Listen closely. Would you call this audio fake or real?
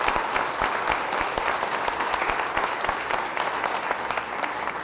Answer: real